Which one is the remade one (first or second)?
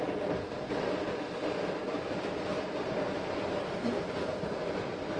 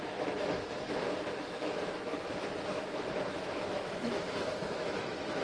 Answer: second